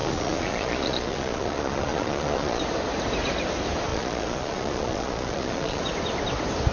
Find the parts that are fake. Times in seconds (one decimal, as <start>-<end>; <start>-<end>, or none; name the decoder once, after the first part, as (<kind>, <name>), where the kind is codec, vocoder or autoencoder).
0.0-2.6 (vocoder, Vocos); 3.9-5.8